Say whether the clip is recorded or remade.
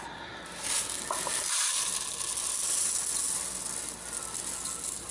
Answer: recorded